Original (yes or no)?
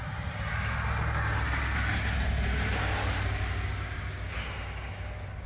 yes